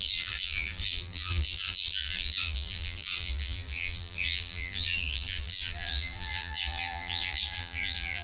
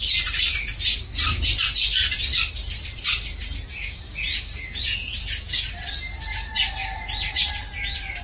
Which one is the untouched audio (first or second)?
second